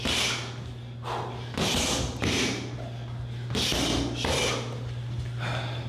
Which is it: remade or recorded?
recorded